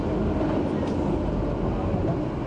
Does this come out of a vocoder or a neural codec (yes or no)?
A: no